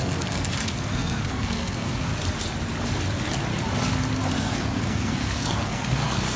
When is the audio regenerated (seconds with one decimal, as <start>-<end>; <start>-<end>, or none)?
0.0-2.1; 4.3-6.4